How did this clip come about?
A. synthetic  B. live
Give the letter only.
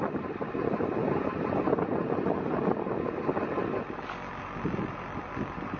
B